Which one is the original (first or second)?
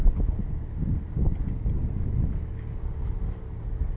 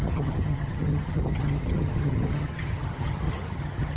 first